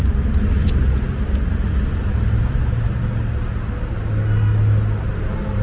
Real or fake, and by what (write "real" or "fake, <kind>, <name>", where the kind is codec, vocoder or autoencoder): real